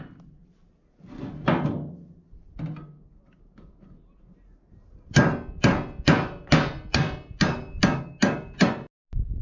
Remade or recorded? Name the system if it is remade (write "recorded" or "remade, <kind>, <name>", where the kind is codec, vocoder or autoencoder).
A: recorded